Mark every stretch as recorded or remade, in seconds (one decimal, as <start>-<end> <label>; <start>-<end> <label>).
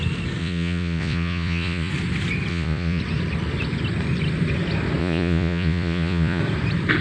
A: 0.0-0.4 recorded; 0.4-1.9 remade; 1.9-2.5 recorded; 2.5-3.0 remade; 3.0-5.0 recorded; 5.0-6.4 remade; 6.4-7.0 recorded